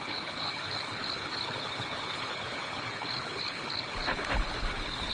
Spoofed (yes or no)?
yes